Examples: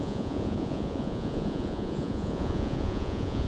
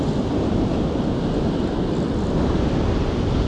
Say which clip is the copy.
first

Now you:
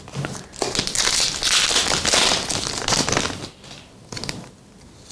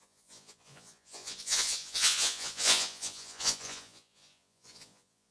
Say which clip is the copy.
second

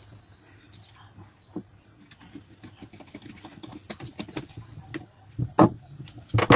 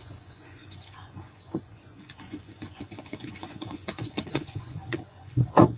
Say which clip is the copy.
second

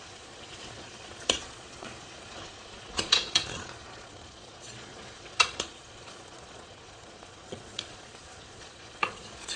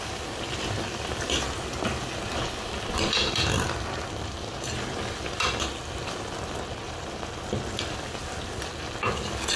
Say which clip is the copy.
first